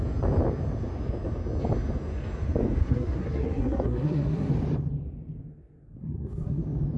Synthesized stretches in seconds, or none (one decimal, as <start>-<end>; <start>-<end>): 2.8-4.5; 6.0-6.6